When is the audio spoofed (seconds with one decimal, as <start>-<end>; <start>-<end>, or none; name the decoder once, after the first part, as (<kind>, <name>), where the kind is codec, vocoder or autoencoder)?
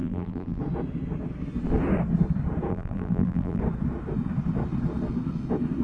0.0-0.6 (vocoder, BigVGAN v2); 2.7-3.6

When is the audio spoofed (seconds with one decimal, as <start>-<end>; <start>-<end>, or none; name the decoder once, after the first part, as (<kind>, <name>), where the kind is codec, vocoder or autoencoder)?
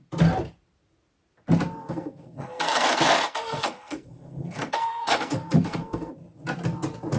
1.8-6.1 (codec, SNAC)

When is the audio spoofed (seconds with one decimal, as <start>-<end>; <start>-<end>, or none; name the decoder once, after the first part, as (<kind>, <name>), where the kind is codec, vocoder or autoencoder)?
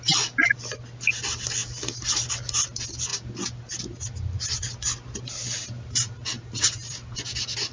none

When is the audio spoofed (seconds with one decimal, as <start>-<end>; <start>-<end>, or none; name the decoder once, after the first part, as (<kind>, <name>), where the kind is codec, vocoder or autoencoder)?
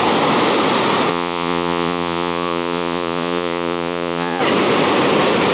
1.1-4.4 (vocoder, Vocos)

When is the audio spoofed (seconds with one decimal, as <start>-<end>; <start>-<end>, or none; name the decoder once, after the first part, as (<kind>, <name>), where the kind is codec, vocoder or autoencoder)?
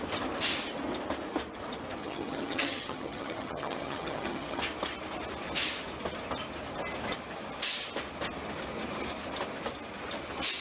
2.0-4.6 (vocoder, HiFi-GAN)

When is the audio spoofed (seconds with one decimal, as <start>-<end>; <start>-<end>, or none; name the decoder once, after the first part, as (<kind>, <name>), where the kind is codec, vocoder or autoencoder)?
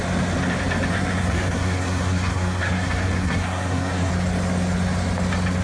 0.9-4.1 (codec, SNAC)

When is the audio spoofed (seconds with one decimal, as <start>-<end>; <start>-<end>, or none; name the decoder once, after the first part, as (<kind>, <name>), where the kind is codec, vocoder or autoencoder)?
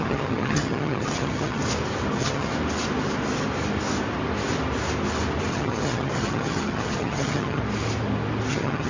0.0-1.6 (vocoder, HiFi-GAN); 2.1-2.5; 5.5-7.6; 8.5-8.9